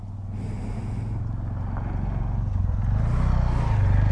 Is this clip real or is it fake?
real